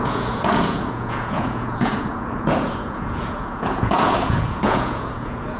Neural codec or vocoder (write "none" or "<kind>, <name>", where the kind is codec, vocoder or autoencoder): vocoder, Vocos